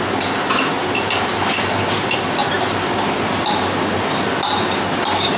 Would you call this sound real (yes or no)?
yes